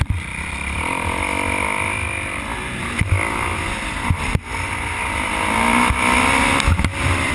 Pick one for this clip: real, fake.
real